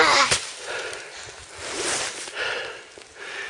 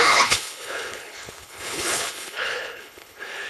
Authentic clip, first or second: first